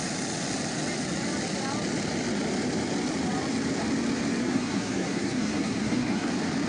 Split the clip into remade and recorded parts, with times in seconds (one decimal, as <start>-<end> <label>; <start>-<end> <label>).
0.0-4.4 recorded; 4.4-6.3 remade; 6.3-6.7 recorded